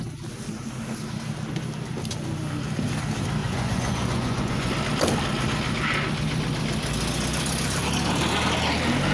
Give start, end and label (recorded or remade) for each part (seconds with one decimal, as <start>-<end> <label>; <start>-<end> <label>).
0.0-3.4 recorded; 3.4-4.7 remade; 4.7-9.1 recorded